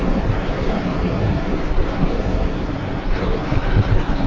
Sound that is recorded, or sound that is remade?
remade